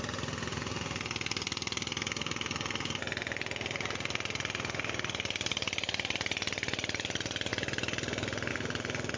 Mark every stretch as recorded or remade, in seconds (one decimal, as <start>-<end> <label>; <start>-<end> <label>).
0.0-9.2 recorded